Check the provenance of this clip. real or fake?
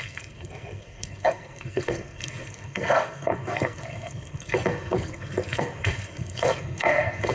fake